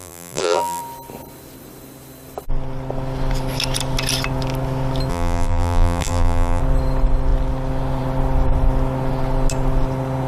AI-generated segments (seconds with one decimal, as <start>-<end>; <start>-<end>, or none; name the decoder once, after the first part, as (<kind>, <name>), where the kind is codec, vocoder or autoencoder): 0.0-0.8 (vocoder, BigVGAN v2); 5.1-6.6